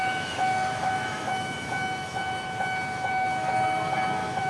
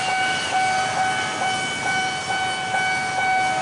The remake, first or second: first